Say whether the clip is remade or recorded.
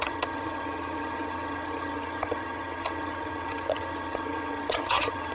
remade